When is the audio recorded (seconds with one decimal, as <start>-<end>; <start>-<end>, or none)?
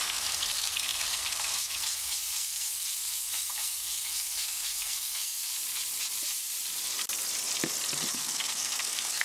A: 5.5-8.1